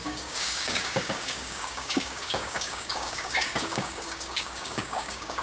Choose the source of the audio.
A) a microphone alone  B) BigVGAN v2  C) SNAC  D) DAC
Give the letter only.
D